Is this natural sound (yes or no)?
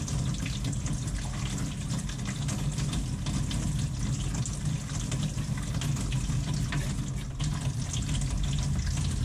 yes